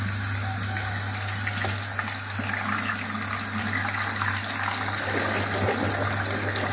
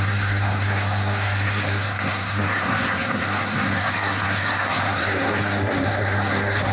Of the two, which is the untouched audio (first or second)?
first